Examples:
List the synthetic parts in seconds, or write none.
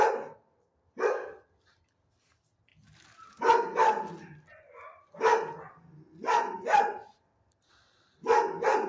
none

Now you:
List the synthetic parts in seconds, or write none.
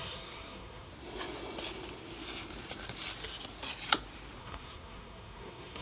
0.0-0.9 (codec, SNAC); 4.4-5.8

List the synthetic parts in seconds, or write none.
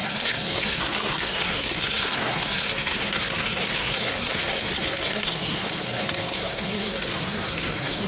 0.0-8.1 (codec, SNAC)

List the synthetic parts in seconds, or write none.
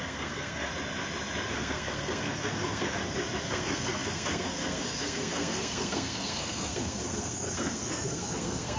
0.0-0.7 (codec, SNAC); 1.5-3.0; 3.5-8.8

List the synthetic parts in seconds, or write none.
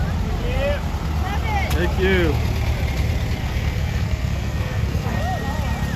3.4-5.2 (codec, SNAC)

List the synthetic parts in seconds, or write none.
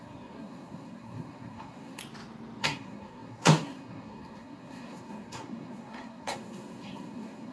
0.0-2.0 (codec, SNAC); 2.6-7.5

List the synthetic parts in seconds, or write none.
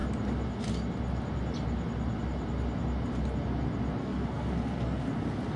4.0-5.1 (codec, SNAC)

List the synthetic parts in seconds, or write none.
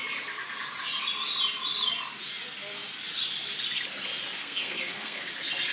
4.4-5.3 (codec, SNAC)